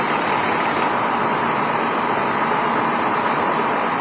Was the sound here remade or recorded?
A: recorded